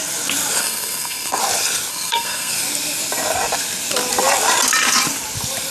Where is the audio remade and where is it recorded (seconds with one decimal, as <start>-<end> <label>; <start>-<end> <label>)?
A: 0.0-0.6 recorded; 0.6-1.4 remade; 1.4-1.9 recorded; 1.9-2.5 remade; 2.5-5.7 recorded